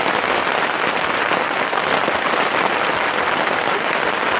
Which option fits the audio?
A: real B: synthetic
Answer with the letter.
A